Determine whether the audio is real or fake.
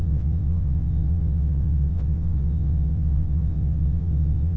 fake